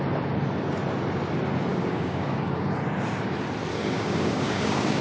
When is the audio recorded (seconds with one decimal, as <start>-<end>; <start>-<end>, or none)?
0.0-1.7; 2.7-3.7